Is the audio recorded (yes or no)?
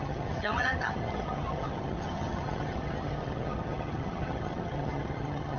no